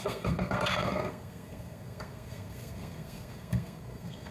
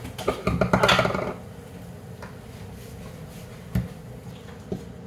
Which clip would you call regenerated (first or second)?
first